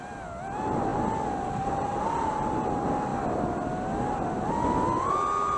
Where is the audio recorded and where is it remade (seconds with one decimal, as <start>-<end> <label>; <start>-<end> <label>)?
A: 0.0-5.6 recorded